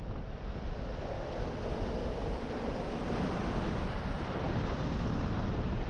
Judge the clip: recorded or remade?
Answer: recorded